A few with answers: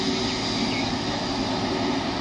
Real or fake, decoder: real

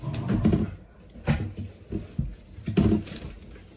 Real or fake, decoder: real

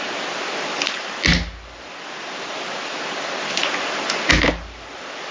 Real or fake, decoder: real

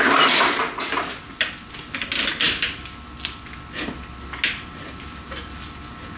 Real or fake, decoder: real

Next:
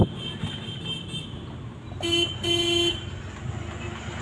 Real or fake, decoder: real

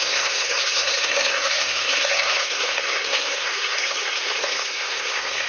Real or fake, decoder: fake, codec, SNAC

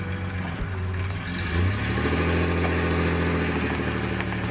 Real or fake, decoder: real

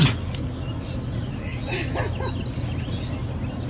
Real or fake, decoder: real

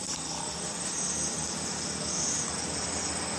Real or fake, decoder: real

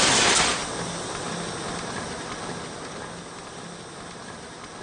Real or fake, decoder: real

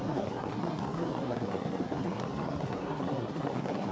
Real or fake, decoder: fake, codec, SNAC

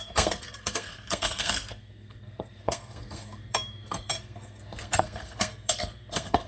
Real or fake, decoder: fake, codec, SNAC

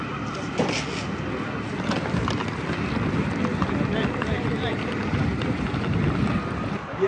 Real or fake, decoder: real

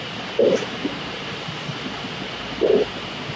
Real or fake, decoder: real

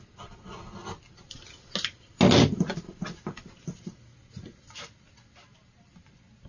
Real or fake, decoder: real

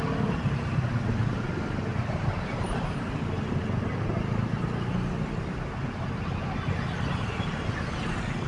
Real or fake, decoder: real